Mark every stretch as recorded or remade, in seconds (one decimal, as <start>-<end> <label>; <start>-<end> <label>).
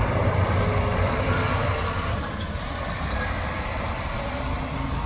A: 0.0-5.1 remade